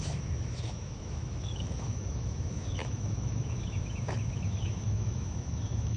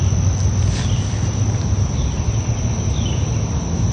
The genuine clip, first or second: second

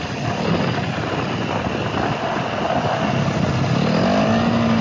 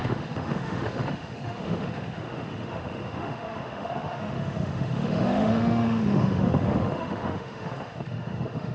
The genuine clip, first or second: first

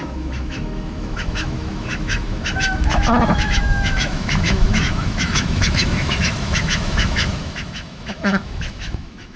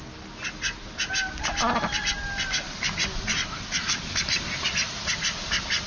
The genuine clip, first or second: second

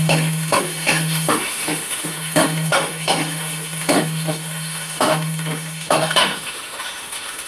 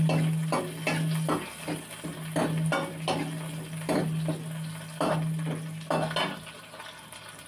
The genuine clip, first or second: second